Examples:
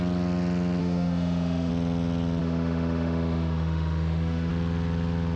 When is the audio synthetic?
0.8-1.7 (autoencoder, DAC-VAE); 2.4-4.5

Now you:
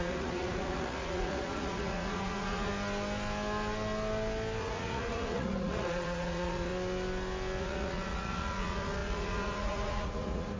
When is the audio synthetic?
0.0-2.7 (vocoder, Vocos); 4.6-6.7; 7.6-10.6

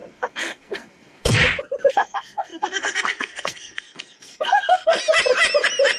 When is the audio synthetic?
0.0-1.4 (codec, SNAC); 1.9-5.0

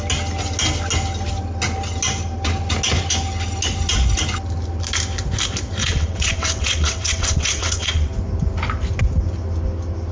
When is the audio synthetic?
5.8-8.1 (vocoder, WaveNeXt)

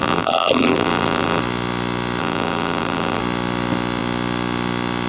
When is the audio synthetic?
0.0-1.4 (vocoder, BigVGAN v2); 2.2-3.2

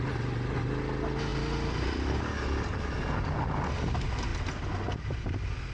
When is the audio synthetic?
1.3-2.2 (vocoder, BigVGAN v2)